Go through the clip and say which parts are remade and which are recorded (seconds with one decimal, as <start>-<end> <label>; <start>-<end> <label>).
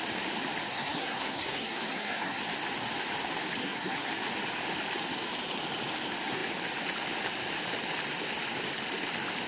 0.0-0.7 recorded; 0.7-2.4 remade; 2.4-3.6 recorded; 3.6-4.1 remade; 4.1-9.5 recorded